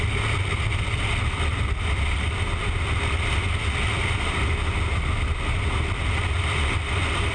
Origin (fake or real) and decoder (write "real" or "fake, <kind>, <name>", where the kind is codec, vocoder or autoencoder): real